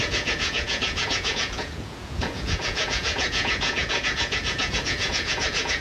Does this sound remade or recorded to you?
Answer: remade